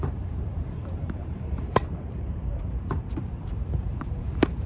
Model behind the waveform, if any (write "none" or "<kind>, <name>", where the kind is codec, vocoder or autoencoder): vocoder, BigVGAN v2